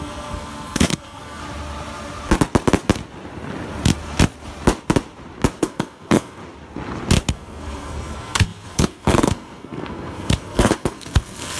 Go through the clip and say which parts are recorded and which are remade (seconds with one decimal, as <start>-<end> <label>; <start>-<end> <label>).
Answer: 0.0-1.4 remade; 1.4-5.6 recorded; 5.6-6.4 remade; 6.4-7.3 recorded; 7.3-11.6 remade